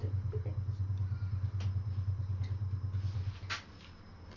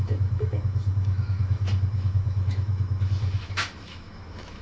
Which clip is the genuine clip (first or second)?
first